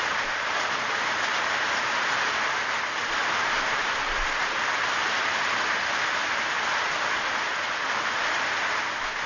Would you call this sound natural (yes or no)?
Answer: yes